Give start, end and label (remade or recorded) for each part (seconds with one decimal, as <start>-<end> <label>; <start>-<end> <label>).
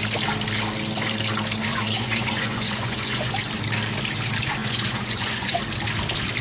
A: 0.0-1.7 recorded; 1.7-3.3 remade; 3.3-4.6 recorded; 4.6-5.6 remade; 5.6-6.4 recorded